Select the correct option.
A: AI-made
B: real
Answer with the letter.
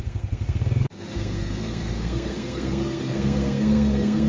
A